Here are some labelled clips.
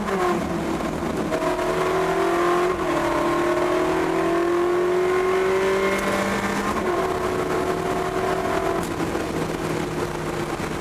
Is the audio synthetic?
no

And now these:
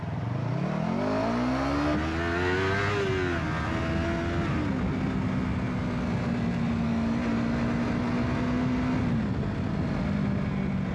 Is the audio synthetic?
no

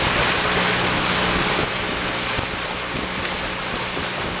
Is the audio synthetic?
no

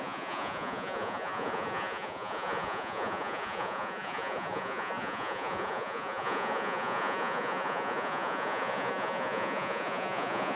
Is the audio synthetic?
yes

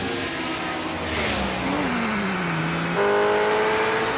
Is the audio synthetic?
no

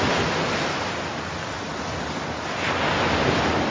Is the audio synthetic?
no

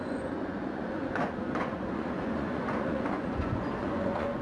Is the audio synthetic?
yes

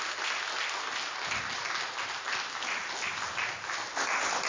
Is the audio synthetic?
no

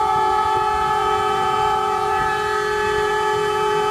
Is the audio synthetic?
yes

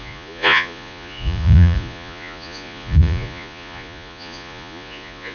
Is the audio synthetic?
yes